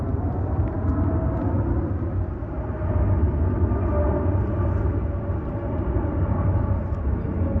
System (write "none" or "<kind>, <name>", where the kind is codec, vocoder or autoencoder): none